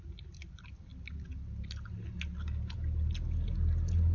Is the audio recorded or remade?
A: recorded